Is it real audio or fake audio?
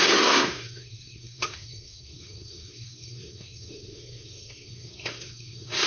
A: fake